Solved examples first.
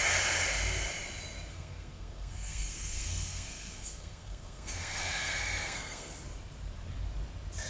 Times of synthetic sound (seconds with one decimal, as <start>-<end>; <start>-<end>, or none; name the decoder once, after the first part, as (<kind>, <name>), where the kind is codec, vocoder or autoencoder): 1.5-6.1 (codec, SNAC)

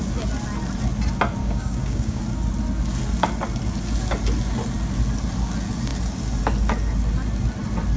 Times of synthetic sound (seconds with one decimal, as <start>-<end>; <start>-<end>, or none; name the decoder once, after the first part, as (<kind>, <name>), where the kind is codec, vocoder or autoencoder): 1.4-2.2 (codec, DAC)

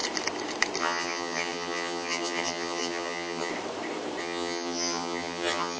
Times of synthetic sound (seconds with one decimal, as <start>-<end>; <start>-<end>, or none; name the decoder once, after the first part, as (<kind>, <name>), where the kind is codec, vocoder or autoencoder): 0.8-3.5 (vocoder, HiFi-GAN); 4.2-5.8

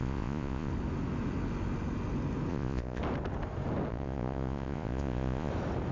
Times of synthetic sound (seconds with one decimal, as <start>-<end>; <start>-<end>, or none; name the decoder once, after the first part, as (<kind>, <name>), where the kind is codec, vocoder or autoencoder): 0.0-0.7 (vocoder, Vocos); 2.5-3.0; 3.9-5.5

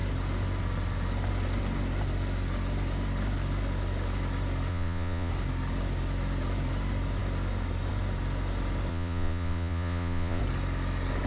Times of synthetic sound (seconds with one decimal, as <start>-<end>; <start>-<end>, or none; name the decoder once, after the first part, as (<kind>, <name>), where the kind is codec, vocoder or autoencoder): 4.7-5.3 (vocoder, Vocos); 8.9-10.4

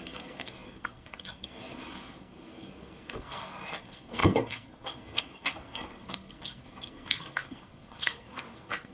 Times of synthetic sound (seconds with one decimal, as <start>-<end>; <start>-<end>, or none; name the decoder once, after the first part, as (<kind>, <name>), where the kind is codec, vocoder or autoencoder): 0.0-8.9 (codec, SNAC)

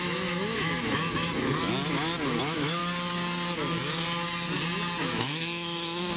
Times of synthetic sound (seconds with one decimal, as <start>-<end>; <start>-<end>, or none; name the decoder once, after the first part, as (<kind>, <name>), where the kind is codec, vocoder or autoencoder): 0.0-1.6 (autoencoder, DAC-VAE); 2.4-2.8; 5.0-6.2